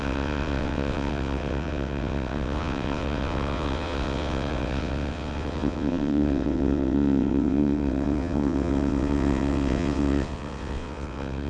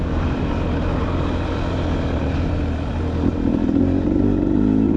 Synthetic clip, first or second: first